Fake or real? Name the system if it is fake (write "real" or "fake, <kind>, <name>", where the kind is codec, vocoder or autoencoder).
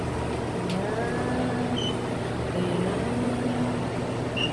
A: real